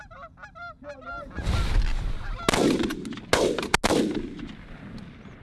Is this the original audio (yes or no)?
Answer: yes